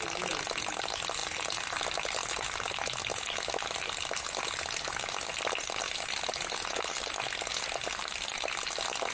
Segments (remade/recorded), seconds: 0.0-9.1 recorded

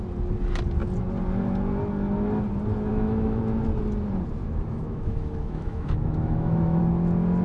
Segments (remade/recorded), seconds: 0.0-2.9 recorded; 2.9-3.4 remade; 3.4-4.4 recorded; 4.4-6.8 remade; 6.8-7.4 recorded

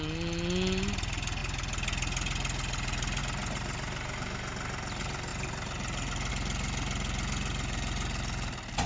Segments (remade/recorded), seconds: 0.0-8.9 recorded

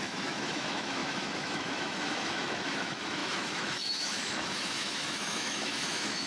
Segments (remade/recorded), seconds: 0.0-6.3 remade

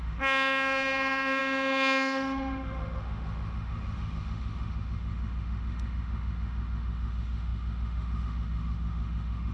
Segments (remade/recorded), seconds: 0.0-9.5 remade

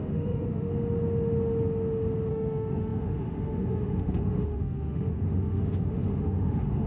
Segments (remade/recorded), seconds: 0.0-0.7 remade; 0.7-2.3 recorded; 2.3-6.9 remade

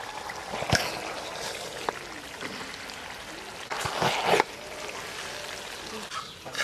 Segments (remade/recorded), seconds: 0.0-6.6 recorded

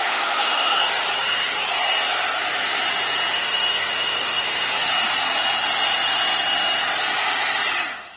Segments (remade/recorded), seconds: 0.0-0.8 remade; 0.8-3.3 recorded; 3.3-4.6 remade; 4.6-8.2 recorded